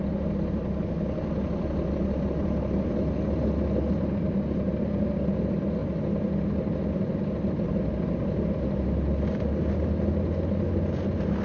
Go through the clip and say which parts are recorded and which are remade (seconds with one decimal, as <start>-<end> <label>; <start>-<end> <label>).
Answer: 0.0-11.4 recorded